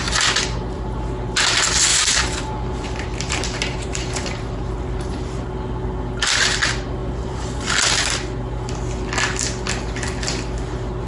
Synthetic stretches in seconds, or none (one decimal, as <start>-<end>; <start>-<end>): 1.9-5.5; 7.0-7.6